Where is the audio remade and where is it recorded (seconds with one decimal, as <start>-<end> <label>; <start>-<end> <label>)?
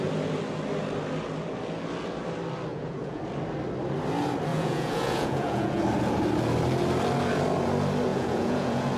0.0-2.7 recorded; 2.7-3.2 remade; 3.2-4.5 recorded; 4.5-5.8 remade; 5.8-8.1 recorded; 8.1-9.0 remade